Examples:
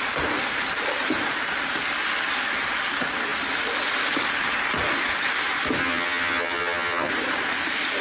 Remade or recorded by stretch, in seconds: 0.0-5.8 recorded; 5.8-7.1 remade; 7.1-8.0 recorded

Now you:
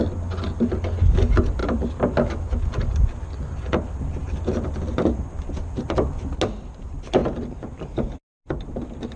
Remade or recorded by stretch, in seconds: 0.0-9.2 recorded